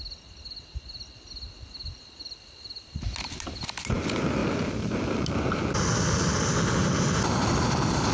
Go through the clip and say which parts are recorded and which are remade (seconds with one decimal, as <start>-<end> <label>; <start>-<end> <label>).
0.0-8.1 recorded